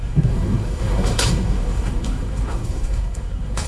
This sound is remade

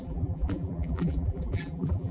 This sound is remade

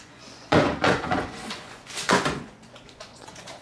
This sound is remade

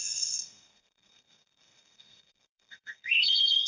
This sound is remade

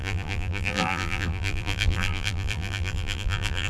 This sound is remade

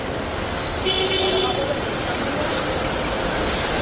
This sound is recorded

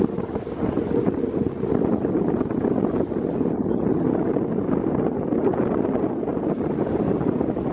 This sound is recorded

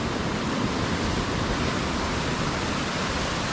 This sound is remade